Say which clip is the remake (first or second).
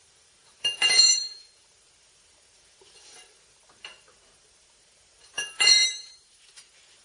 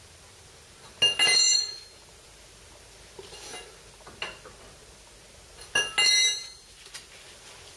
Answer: first